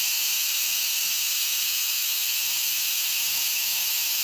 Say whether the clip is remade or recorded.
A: remade